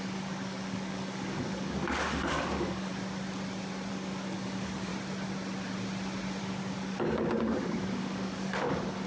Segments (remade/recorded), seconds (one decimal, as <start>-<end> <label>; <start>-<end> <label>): 0.0-2.9 remade; 2.9-3.9 recorded; 3.9-4.9 remade; 4.9-6.4 recorded; 6.4-9.1 remade